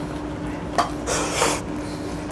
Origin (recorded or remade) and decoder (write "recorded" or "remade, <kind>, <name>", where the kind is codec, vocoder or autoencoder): recorded